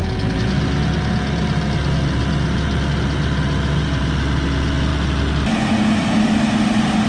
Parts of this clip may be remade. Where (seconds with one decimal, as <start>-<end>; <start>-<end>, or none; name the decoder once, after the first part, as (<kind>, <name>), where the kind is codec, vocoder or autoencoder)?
none